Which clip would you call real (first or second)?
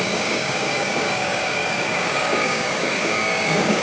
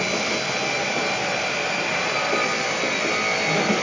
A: second